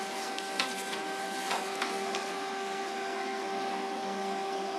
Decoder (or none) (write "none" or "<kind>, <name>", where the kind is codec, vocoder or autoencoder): codec, SNAC